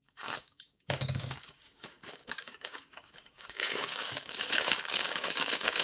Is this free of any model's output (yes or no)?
no